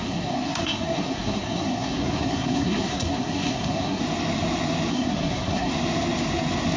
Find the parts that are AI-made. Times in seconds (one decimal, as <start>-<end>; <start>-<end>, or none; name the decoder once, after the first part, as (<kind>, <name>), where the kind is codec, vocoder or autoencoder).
0.0-4.0 (codec, SNAC); 4.9-5.7